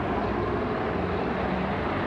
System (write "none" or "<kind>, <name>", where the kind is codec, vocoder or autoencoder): none